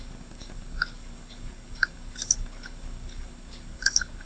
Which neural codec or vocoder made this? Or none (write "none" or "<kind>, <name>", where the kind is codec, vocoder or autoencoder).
codec, DAC